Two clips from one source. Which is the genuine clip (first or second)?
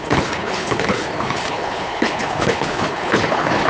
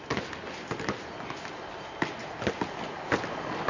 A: second